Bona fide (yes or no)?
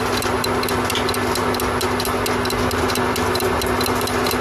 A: yes